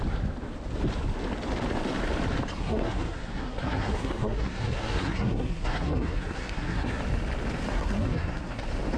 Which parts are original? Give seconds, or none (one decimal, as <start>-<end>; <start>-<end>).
0.0-2.6; 7.0-7.7; 8.6-9.0